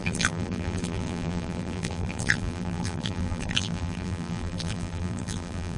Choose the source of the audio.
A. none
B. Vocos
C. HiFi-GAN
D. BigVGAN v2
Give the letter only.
D